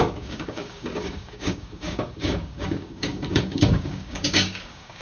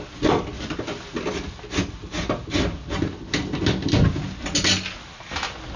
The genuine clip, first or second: second